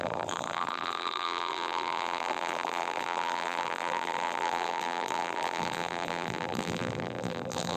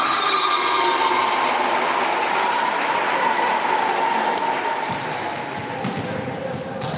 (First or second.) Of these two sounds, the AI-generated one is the first